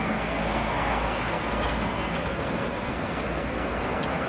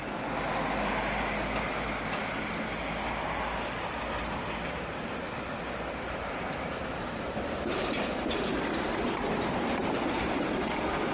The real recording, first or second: second